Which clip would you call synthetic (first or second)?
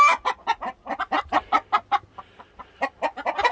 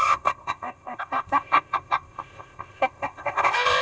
second